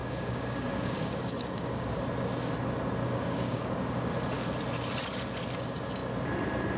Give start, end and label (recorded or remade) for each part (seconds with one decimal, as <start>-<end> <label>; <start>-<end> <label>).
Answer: 0.0-2.0 remade; 2.0-3.0 recorded; 3.0-3.9 remade; 3.9-6.8 recorded